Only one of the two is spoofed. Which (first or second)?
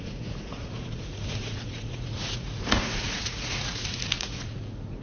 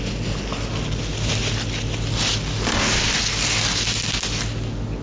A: first